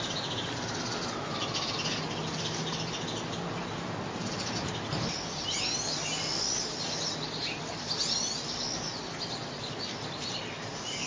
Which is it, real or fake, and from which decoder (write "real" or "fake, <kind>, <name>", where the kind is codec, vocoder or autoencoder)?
real